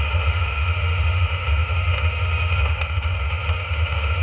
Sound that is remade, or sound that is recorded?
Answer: remade